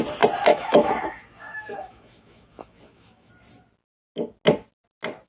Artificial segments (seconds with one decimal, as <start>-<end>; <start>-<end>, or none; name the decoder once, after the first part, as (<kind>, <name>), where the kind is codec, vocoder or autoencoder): 0.5-3.3 (autoencoder, DAC-VAE)

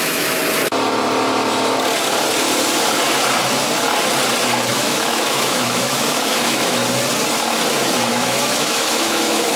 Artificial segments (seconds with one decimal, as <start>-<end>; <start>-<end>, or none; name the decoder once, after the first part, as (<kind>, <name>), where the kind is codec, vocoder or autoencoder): 0.0-0.4 (autoencoder, DAC-VAE); 4.7-6.8; 8.1-9.6

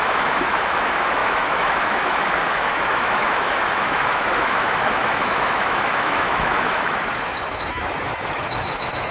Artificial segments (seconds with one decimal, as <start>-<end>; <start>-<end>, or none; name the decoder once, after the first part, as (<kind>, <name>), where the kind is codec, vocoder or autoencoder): 0.0-9.1 (autoencoder, DAC-VAE)

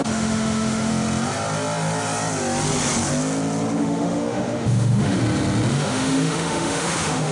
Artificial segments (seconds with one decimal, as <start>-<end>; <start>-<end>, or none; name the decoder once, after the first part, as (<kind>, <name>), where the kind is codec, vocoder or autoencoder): 0.0-0.9 (autoencoder, DAC-VAE); 3.8-5.2; 5.7-7.3

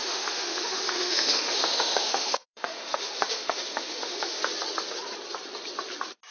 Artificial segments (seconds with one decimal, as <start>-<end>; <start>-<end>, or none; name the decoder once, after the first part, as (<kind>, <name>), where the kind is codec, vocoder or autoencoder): 0.0-4.4 (autoencoder, DAC-VAE)